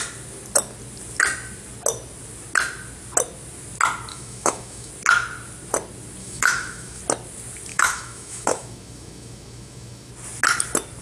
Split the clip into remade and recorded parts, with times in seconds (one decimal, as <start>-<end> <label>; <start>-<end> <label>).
0.0-4.1 recorded; 4.1-4.9 remade; 4.9-6.2 recorded; 6.2-7.0 remade; 7.0-7.7 recorded; 7.7-10.1 remade; 10.1-11.0 recorded